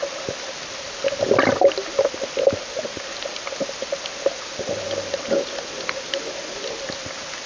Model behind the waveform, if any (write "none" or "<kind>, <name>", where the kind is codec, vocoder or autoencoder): none